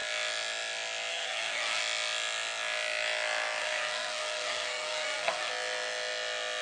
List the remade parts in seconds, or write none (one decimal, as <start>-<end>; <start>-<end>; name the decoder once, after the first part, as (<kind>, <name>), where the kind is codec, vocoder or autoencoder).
1.1-1.8 (codec, SNAC); 3.6-5.5